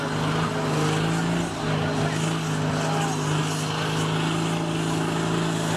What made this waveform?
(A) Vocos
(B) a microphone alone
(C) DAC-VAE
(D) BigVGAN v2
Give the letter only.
B